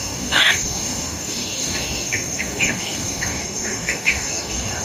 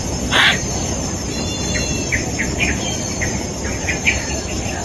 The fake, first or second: first